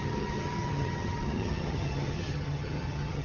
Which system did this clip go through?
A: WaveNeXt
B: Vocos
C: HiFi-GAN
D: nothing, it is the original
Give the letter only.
C